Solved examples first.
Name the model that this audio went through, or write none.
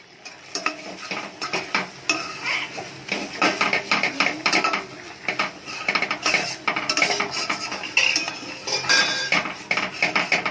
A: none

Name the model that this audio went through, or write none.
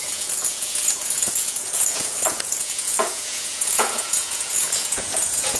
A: vocoder, Vocos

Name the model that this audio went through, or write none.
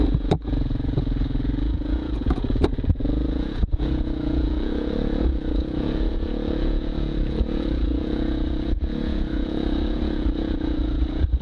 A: vocoder, Vocos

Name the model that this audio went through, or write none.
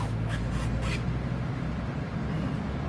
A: none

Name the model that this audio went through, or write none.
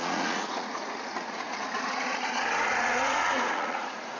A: vocoder, Vocos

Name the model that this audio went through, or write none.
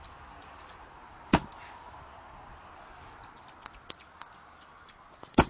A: none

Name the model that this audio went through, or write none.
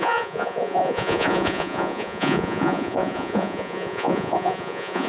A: vocoder, Vocos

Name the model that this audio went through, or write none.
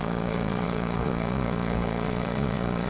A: vocoder, Vocos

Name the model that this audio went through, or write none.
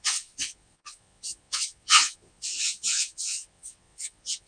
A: vocoder, Vocos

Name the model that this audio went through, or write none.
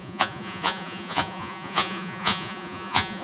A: vocoder, Vocos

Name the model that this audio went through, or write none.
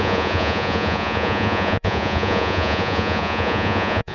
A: vocoder, Vocos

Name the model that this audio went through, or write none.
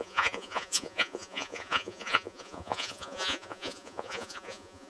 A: vocoder, Vocos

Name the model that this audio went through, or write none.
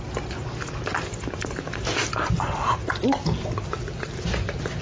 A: none